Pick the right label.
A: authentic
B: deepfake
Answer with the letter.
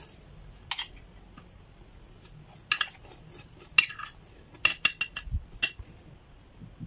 A